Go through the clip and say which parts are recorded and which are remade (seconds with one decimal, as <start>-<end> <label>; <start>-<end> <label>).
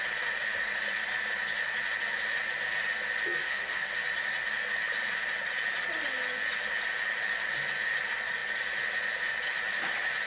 0.0-3.3 recorded; 3.3-3.9 remade; 3.9-10.3 recorded